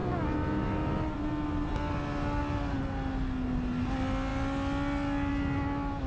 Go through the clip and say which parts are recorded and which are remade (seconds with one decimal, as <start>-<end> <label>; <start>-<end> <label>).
0.0-6.1 recorded